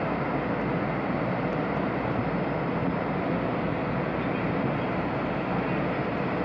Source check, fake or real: real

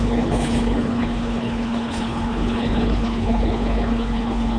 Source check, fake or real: fake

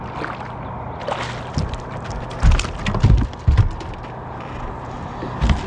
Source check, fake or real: real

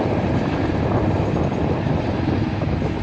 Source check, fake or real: real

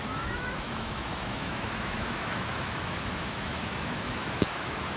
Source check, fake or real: fake